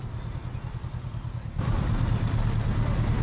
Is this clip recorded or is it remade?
remade